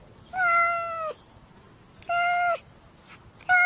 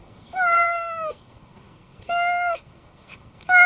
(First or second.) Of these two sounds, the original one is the first